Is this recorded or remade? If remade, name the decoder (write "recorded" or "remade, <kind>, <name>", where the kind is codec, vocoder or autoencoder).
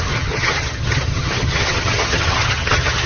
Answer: remade, vocoder, HiFi-GAN